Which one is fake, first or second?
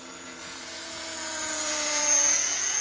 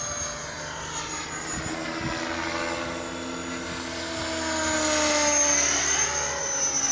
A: first